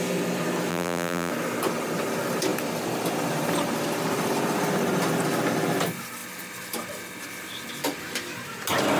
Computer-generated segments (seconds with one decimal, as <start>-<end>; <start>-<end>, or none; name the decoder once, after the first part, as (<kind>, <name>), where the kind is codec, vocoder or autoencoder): 0.7-1.3 (vocoder, BigVGAN v2)